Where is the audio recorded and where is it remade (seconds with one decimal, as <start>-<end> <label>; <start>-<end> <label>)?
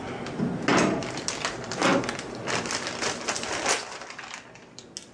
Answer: 0.0-5.1 recorded